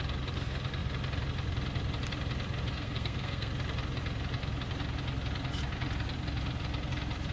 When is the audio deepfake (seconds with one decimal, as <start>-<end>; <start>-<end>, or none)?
2.7-3.5

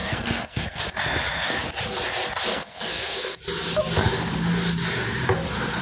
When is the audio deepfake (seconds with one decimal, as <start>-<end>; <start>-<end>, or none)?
0.0-0.8; 2.5-3.4